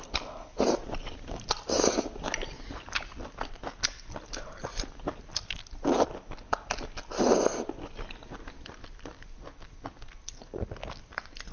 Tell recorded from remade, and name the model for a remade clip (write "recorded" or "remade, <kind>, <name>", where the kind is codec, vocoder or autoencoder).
recorded